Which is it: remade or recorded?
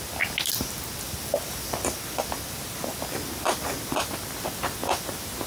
recorded